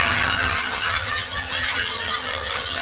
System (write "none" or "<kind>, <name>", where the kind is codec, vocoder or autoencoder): vocoder, HiFi-GAN